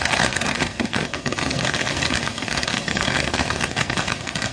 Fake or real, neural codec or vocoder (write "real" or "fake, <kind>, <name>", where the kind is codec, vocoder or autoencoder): fake, codec, SNAC